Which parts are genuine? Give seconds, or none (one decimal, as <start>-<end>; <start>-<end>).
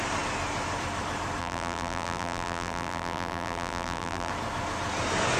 0.0-1.4; 4.3-5.4